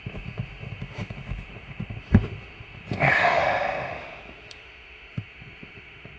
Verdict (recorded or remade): remade